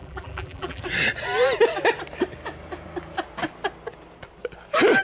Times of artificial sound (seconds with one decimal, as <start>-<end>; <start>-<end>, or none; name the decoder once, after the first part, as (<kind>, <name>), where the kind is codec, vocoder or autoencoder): 0.0-0.8 (vocoder, BigVGAN v2)